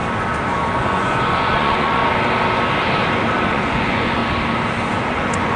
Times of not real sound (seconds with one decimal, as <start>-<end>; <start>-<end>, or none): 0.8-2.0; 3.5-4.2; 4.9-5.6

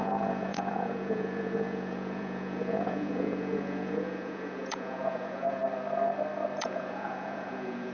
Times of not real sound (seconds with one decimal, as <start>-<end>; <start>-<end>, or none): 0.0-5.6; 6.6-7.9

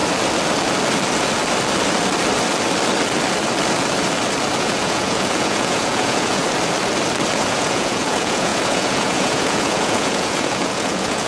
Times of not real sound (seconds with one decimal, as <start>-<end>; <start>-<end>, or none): 4.6-6.4; 7.3-11.3

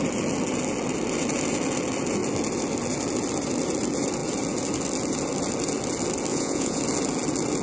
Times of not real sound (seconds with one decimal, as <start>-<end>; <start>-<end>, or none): 6.3-6.8

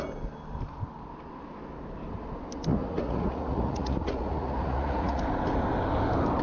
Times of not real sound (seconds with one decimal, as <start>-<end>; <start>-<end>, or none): 2.7-5.2